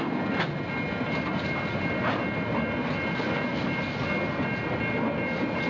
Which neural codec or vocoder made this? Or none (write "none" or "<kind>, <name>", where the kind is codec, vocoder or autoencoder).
none